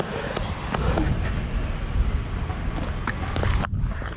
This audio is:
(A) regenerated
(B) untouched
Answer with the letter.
B